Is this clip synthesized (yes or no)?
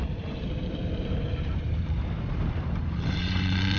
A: yes